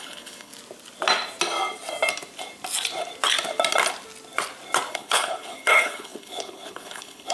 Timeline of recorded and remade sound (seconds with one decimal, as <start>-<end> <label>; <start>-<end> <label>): 0.0-0.5 remade; 0.5-4.9 recorded; 4.9-7.3 remade